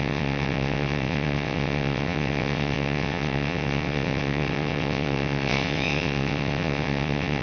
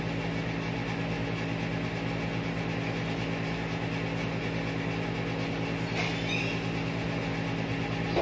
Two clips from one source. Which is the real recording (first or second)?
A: second